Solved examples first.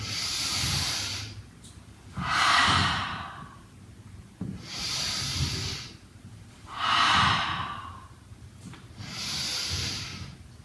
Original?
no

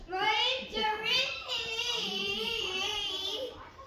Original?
no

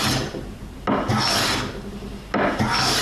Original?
yes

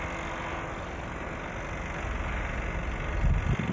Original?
yes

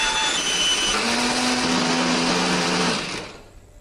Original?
yes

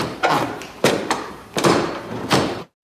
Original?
no